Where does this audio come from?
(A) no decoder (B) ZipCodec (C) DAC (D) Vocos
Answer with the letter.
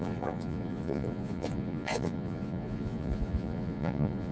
D